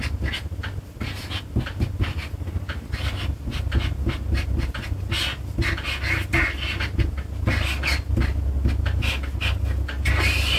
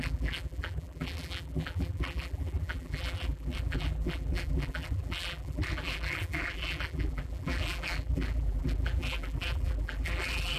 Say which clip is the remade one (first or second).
second